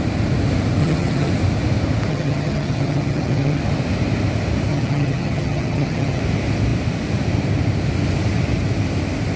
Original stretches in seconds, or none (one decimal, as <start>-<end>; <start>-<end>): 0.0-0.8; 1.3-2.1; 3.6-4.7; 6.2-9.4